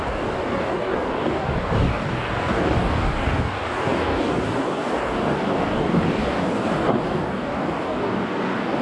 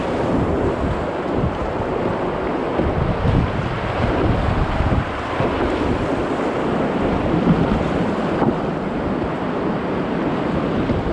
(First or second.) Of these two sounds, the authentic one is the second